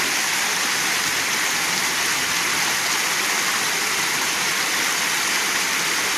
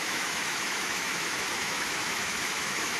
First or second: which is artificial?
second